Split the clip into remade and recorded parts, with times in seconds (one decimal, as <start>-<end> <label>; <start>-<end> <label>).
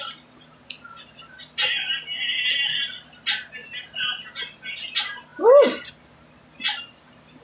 0.0-2.3 recorded; 2.3-2.8 remade; 2.8-3.6 recorded; 3.6-4.6 remade; 4.6-7.4 recorded